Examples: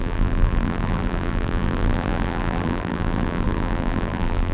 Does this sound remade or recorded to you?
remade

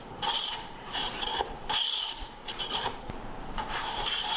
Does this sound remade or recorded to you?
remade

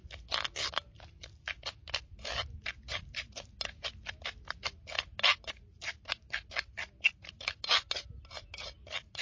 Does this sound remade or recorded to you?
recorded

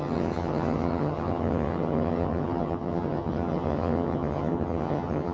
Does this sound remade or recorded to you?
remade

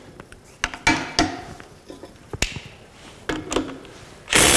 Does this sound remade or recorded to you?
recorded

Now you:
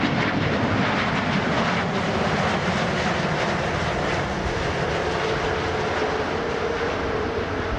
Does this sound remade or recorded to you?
recorded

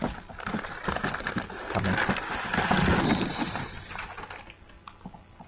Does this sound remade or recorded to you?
recorded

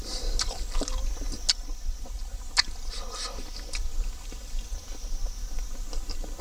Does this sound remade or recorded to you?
recorded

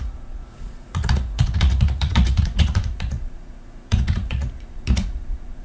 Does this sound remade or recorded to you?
remade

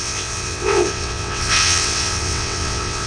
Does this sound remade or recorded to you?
remade